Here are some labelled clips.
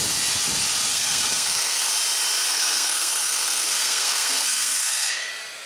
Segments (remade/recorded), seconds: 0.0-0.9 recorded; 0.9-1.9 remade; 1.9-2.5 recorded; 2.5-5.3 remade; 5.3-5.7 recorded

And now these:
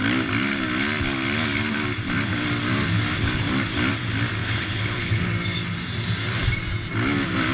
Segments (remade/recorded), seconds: 0.0-4.4 recorded; 4.4-5.2 remade; 5.2-7.5 recorded

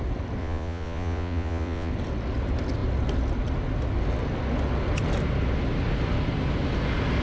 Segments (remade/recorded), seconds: 0.0-0.4 recorded; 0.4-1.9 remade; 1.9-7.2 recorded

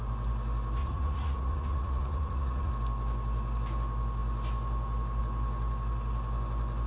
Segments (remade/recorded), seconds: 0.0-0.8 recorded; 0.8-2.7 remade; 2.7-6.9 recorded

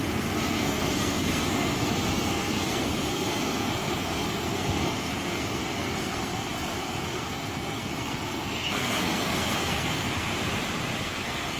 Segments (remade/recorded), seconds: 0.0-10.3 remade; 10.3-11.0 recorded; 11.0-11.6 remade

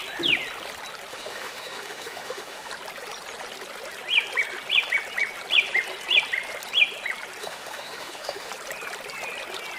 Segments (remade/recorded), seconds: 0.0-1.1 recorded; 1.1-2.7 remade; 2.7-7.4 recorded; 7.4-8.5 remade; 8.5-9.8 recorded